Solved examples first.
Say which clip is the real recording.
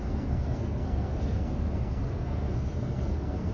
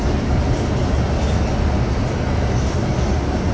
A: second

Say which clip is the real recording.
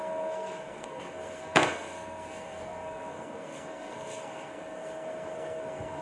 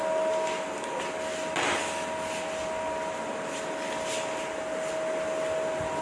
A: second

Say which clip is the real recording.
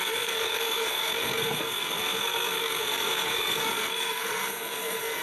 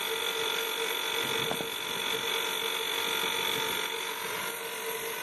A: second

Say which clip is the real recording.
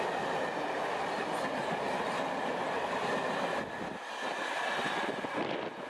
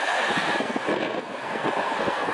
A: first